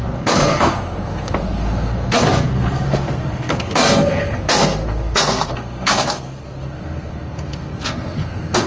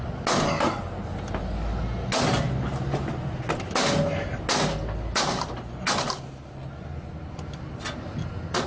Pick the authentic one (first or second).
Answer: second